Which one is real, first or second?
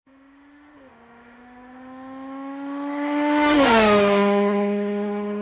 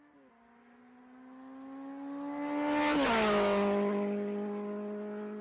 second